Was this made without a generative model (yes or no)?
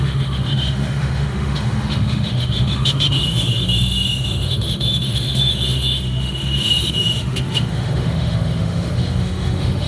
no